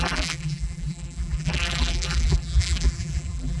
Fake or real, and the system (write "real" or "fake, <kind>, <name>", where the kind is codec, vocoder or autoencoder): fake, vocoder, BigVGAN v2